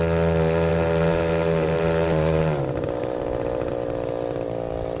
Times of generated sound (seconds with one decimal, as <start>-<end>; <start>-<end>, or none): 0.7-3.7